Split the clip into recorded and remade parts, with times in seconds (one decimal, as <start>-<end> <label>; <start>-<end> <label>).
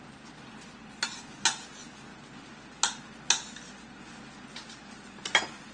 0.0-5.7 recorded